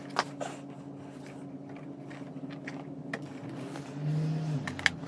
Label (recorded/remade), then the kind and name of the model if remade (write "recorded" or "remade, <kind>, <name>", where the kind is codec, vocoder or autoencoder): recorded